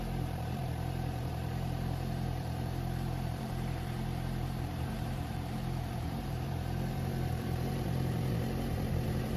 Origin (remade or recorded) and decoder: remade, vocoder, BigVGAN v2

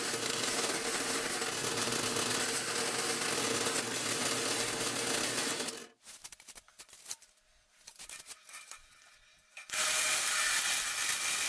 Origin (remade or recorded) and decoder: recorded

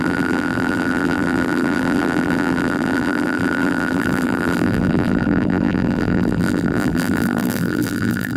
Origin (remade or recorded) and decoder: remade, vocoder, BigVGAN v2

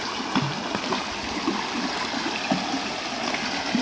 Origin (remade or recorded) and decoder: recorded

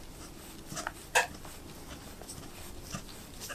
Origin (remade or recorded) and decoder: recorded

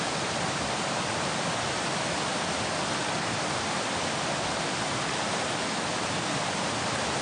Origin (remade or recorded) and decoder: remade, vocoder, BigVGAN v2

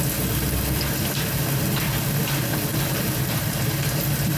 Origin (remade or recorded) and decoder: remade, vocoder, BigVGAN v2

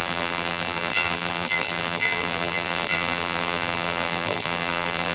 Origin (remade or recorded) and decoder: remade, vocoder, BigVGAN v2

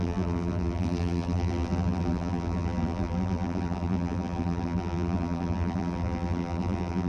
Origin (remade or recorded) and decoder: remade, vocoder, BigVGAN v2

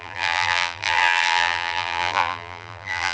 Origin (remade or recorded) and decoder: remade, vocoder, BigVGAN v2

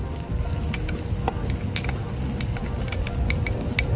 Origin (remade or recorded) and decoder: recorded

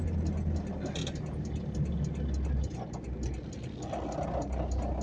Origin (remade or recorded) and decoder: recorded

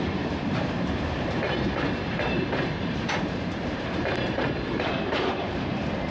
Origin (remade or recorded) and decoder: remade, vocoder, BigVGAN v2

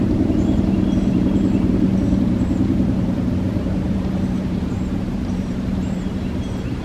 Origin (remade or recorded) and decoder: remade, vocoder, BigVGAN v2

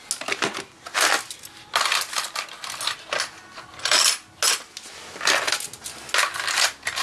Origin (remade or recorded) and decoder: recorded